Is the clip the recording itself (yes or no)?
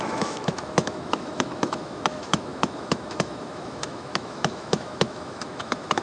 no